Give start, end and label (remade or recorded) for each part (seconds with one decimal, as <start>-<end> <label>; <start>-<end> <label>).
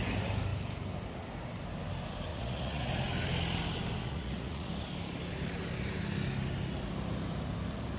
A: 0.0-2.3 recorded; 2.3-2.9 remade; 2.9-4.0 recorded; 4.0-4.7 remade; 4.7-8.0 recorded